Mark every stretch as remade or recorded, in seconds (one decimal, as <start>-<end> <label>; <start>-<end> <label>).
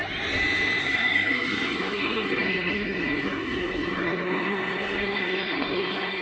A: 0.0-0.8 recorded; 0.8-6.2 remade